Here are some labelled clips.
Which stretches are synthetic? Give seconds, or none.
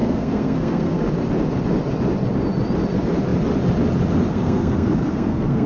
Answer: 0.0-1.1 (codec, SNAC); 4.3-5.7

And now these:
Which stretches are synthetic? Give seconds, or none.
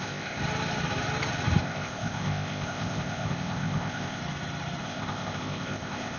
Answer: 0.0-0.4 (codec, ZipCodec); 1.6-4.2; 4.8-6.2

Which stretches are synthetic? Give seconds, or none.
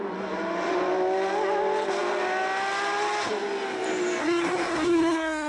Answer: 4.2-5.5 (codec, SNAC)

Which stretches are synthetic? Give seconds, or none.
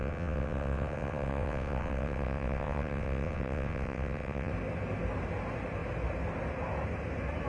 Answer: 0.0-4.5 (vocoder, WaveNeXt)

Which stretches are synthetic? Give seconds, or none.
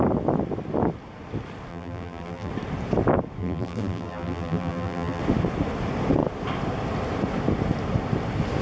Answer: 1.7-2.5 (vocoder, BigVGAN v2); 3.4-5.2